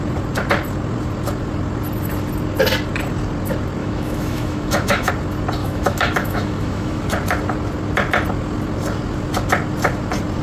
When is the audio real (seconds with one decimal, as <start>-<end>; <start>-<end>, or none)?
0.0-3.8; 5.1-5.6; 7.0-10.4